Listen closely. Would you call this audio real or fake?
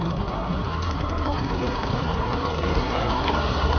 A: fake